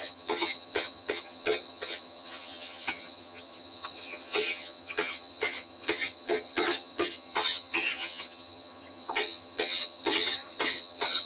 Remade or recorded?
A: remade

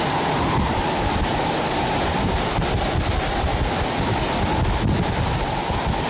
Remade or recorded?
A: recorded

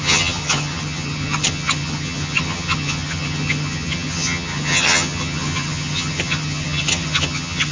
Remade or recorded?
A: remade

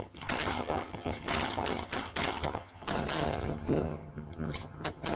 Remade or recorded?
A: remade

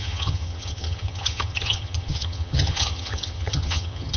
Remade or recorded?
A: remade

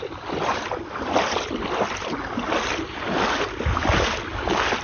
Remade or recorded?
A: recorded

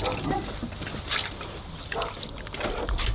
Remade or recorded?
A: recorded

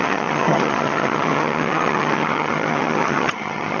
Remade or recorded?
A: remade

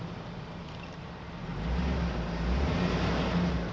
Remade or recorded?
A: recorded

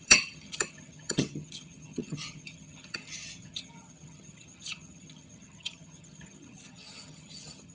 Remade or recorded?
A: remade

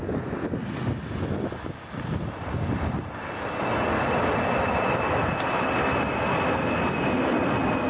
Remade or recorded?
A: recorded